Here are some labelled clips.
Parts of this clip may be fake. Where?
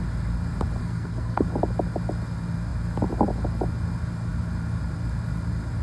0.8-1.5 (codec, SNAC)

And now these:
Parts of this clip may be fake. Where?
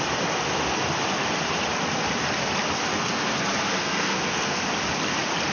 2.9-4.6 (codec, SNAC)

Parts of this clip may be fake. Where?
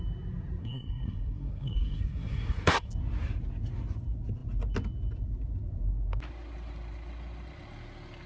0.6-2.9 (codec, SNAC)